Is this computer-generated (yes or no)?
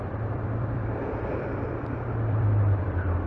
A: yes